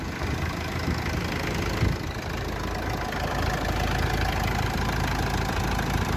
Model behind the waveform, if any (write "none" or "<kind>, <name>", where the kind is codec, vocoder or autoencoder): none